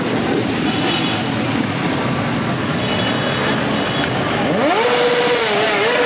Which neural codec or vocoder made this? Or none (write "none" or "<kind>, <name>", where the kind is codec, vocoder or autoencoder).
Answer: none